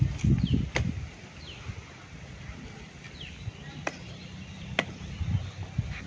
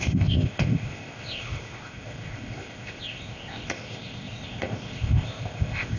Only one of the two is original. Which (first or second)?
first